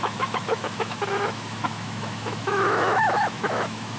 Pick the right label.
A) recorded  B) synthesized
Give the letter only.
B